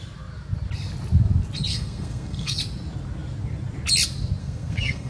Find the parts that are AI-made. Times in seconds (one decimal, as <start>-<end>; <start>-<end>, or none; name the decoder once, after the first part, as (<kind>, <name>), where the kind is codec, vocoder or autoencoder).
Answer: 1.7-2.6 (codec, SNAC); 4.4-5.1